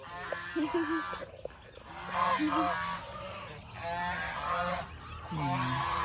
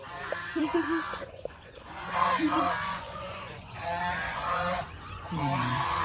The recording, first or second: first